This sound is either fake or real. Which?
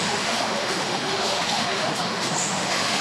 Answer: fake